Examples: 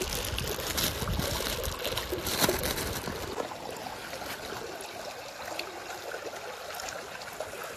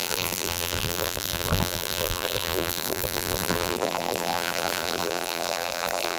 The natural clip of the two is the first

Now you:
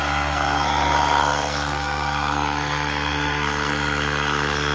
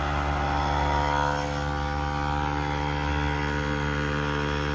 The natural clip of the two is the second